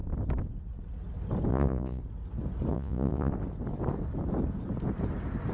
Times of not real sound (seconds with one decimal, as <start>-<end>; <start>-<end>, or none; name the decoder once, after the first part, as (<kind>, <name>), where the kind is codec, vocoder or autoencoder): 1.5-2.0 (vocoder, Vocos); 2.7-3.3